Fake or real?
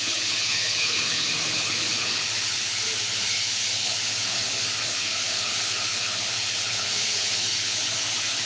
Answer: fake